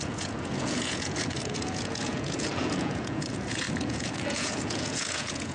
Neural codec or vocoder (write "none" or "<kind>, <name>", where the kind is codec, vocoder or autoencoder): vocoder, Vocos